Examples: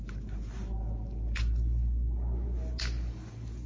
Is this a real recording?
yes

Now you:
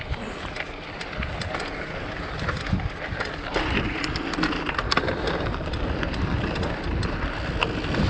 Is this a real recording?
yes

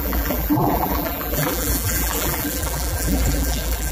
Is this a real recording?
no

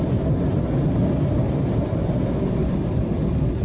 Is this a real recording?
yes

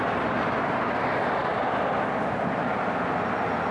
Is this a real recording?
yes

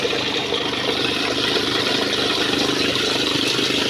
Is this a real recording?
yes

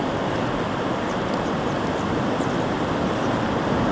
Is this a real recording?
no